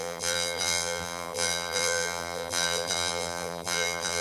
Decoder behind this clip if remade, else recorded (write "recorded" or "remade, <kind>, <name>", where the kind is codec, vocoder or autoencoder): remade, vocoder, BigVGAN v2